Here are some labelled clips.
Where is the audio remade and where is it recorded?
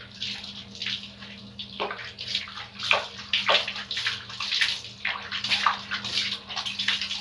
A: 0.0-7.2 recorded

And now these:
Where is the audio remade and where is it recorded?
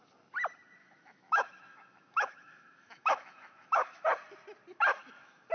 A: 0.0-0.8 recorded; 0.8-4.1 remade; 4.1-4.7 recorded; 4.7-5.5 remade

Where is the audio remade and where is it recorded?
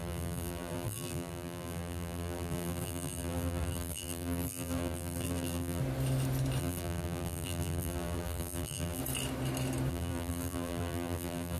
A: 0.0-5.8 remade; 5.8-6.6 recorded; 6.6-9.0 remade; 9.0-9.9 recorded; 9.9-11.6 remade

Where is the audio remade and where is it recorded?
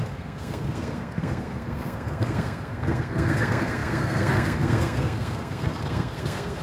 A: 0.0-6.6 remade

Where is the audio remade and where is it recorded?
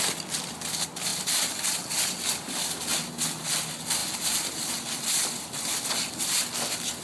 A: 0.0-7.0 recorded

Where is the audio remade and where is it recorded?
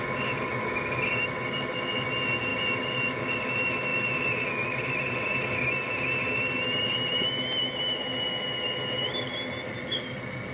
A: 0.0-3.9 recorded; 3.9-5.2 remade; 5.2-10.5 recorded